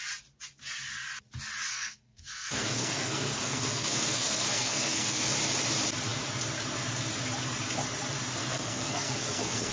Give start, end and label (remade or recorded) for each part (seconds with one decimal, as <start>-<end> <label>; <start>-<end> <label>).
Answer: 0.0-1.7 recorded; 1.7-5.3 remade; 5.3-8.4 recorded; 8.4-9.7 remade